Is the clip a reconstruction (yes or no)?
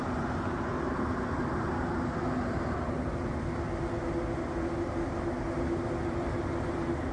no